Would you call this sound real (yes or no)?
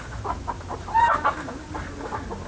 yes